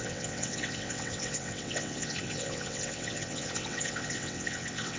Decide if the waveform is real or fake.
fake